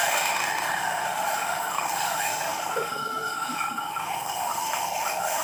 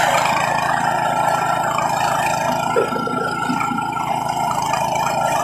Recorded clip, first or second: second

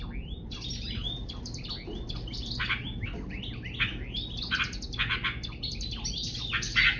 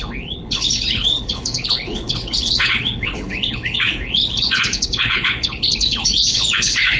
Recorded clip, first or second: first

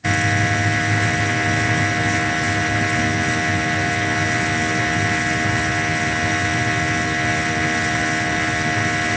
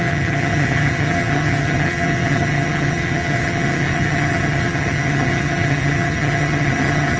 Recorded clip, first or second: first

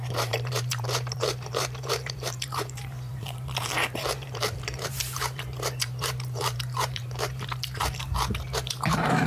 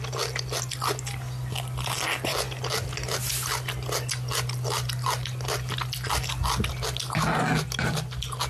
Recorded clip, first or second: second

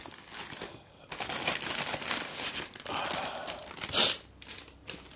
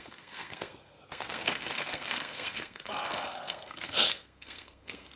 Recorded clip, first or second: first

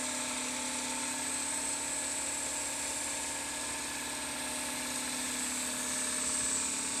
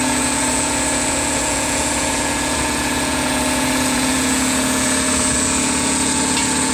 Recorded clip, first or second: first